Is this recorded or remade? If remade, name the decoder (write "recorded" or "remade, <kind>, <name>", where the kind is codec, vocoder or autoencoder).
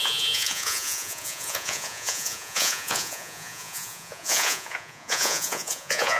remade, vocoder, Vocos